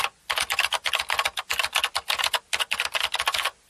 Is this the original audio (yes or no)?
yes